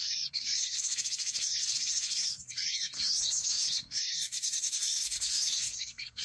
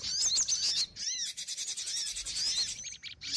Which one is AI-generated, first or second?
first